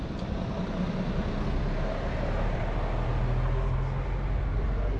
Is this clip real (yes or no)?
yes